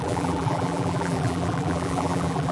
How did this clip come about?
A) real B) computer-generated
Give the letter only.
B